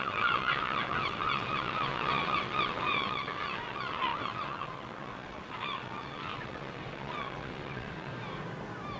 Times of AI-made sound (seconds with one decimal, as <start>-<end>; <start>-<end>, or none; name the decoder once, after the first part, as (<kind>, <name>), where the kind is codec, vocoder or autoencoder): 0.0-8.1 (vocoder, WaveNeXt)